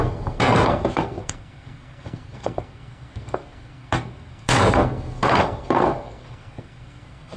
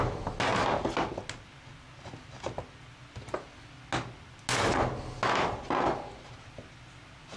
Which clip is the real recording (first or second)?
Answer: second